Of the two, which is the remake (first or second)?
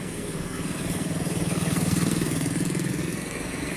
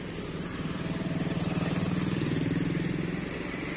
first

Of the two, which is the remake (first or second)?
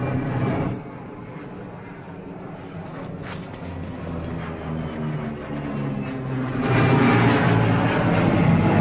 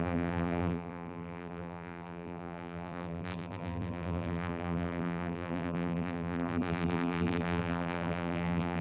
second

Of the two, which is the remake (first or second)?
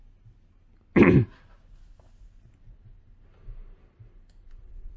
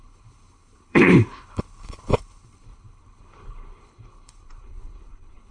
second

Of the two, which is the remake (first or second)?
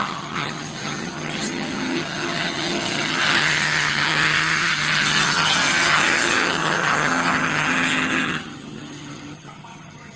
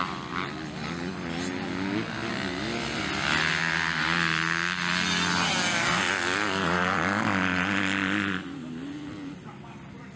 first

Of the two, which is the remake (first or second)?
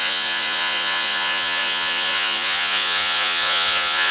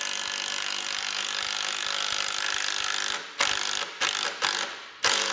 first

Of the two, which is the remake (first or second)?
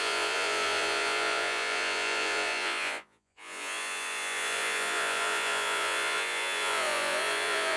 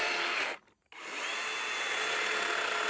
first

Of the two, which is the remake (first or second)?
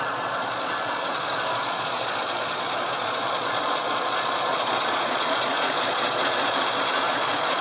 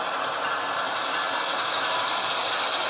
first